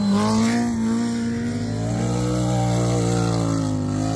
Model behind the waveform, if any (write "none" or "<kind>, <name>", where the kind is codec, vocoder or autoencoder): none